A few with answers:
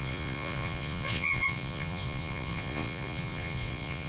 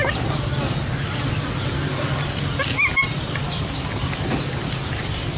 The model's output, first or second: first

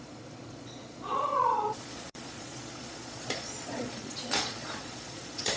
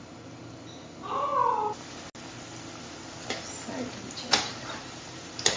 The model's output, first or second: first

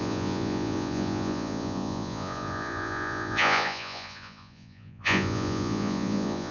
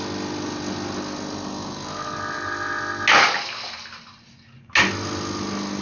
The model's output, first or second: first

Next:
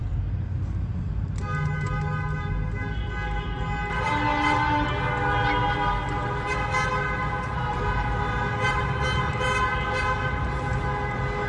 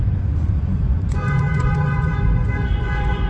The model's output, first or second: second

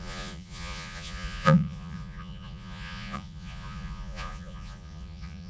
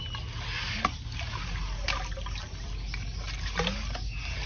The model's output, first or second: first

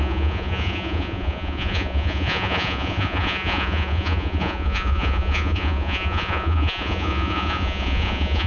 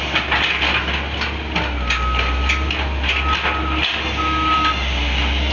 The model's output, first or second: first